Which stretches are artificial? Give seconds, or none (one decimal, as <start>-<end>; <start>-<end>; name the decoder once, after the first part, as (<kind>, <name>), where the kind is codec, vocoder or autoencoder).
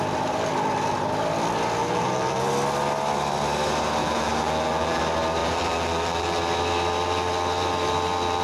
1.8-2.5 (vocoder, BigVGAN v2); 4.0-5.0; 5.4-6.4